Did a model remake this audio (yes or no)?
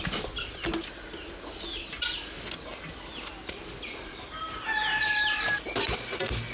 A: no